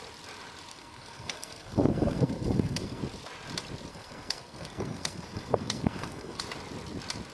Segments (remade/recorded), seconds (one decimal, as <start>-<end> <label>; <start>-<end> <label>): 0.0-0.7 recorded; 0.7-3.0 remade; 3.0-3.9 recorded; 3.9-6.4 remade; 6.4-7.3 recorded